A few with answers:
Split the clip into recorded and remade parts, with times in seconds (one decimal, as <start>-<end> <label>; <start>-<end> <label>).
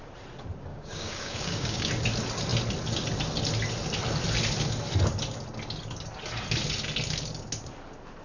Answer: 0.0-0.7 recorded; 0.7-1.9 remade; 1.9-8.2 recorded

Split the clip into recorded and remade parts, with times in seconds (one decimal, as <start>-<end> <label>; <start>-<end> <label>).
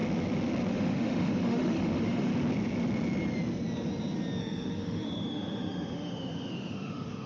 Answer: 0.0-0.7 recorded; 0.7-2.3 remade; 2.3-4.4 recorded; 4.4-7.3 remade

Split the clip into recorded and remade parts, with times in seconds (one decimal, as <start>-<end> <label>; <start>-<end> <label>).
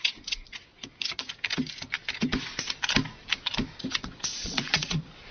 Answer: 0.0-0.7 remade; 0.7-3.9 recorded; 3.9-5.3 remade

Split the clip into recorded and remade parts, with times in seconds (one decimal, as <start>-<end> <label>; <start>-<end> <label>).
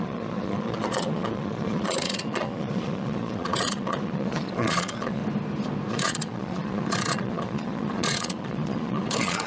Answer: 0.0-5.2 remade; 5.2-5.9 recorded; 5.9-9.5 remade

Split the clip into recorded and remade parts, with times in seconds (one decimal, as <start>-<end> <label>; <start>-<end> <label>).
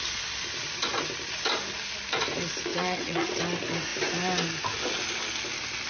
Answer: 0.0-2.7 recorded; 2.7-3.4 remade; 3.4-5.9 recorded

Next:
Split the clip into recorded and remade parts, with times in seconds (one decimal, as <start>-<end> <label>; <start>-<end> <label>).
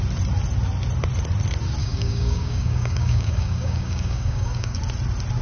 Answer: 0.0-1.8 recorded; 1.8-4.8 remade; 4.8-5.4 recorded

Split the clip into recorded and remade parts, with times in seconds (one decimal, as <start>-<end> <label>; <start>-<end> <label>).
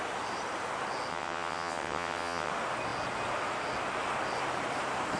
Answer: 0.0-1.1 recorded; 1.1-2.5 remade; 2.5-5.2 recorded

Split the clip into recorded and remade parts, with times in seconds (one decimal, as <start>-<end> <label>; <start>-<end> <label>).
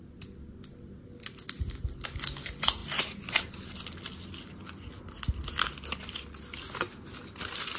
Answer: 0.0-7.8 recorded